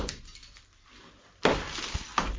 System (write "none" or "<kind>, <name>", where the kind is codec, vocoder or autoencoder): none